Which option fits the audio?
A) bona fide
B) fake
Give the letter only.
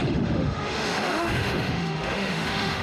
B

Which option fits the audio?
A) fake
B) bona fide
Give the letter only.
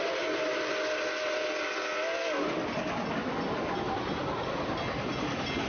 B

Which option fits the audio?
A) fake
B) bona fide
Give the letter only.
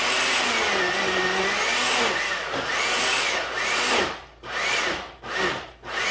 B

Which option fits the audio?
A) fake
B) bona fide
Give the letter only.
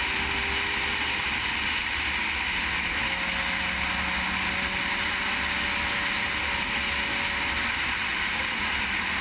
B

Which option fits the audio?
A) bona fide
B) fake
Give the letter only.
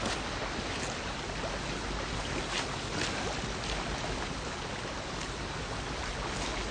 A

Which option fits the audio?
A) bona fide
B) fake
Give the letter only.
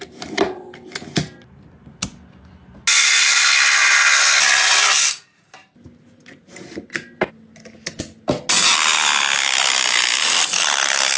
A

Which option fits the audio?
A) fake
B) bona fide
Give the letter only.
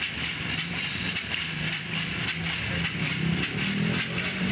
A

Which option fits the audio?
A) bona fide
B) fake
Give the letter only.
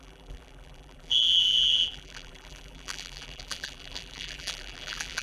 B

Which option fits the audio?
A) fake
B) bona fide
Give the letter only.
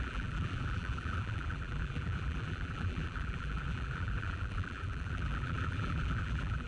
A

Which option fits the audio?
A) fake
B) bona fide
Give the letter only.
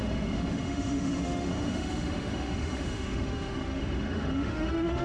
A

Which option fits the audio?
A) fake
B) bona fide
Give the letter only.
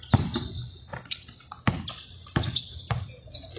B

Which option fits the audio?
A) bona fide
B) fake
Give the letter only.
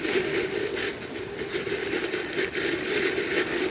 A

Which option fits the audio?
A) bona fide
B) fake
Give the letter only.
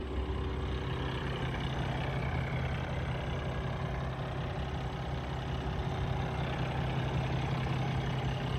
A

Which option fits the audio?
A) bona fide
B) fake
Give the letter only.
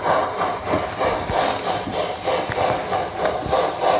A